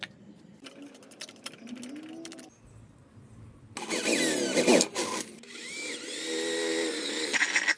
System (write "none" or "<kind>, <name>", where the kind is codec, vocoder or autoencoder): none